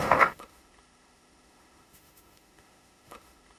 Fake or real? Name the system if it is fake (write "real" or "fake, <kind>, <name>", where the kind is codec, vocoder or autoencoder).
fake, autoencoder, DAC-VAE